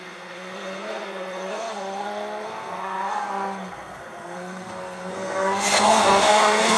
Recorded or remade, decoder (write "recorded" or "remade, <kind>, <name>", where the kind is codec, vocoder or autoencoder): remade, codec, SNAC